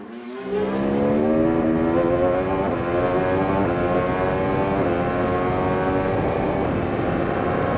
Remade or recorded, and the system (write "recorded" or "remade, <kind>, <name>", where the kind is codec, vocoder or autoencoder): recorded